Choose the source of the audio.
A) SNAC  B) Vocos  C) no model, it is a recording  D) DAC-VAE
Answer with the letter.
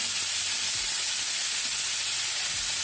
C